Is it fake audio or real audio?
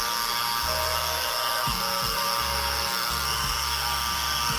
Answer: fake